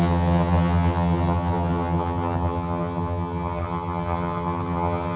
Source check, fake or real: fake